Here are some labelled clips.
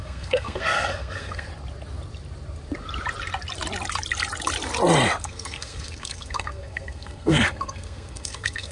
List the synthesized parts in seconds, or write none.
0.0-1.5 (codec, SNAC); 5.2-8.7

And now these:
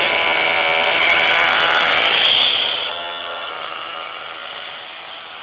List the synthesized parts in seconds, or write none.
2.9-3.5 (vocoder, HiFi-GAN)

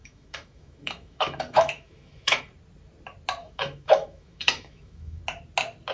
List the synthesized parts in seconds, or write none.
0.0-2.4 (autoencoder, DAC-VAE); 3.4-5.2